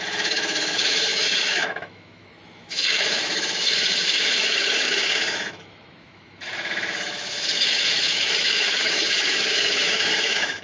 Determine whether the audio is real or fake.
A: fake